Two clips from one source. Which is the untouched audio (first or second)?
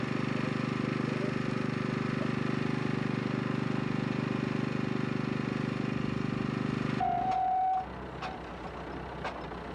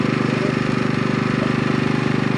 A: first